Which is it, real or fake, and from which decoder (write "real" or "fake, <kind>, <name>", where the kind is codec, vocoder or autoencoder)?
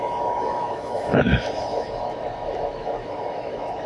fake, autoencoder, DAC-VAE